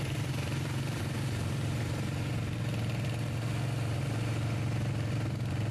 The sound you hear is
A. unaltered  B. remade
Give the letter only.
A